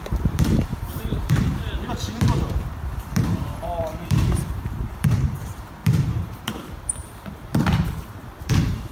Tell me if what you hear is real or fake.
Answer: fake